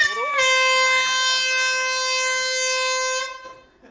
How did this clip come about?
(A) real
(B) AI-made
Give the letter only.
A